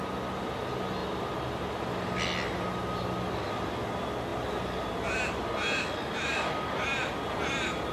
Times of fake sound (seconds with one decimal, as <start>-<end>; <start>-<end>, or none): none